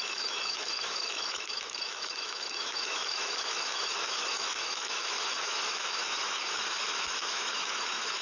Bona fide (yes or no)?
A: no